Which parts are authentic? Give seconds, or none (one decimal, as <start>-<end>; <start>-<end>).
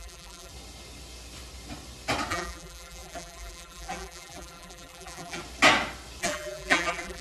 0.5-2.3; 5.4-6.2